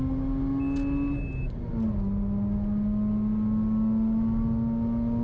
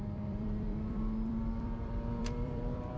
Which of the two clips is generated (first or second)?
second